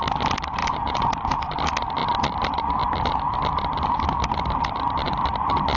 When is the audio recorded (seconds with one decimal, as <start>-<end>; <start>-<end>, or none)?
0.0-0.6; 1.3-5.8